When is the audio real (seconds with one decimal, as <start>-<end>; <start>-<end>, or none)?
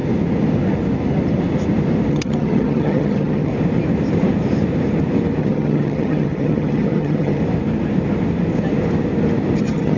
0.0-2.1; 3.5-5.4; 7.4-9.6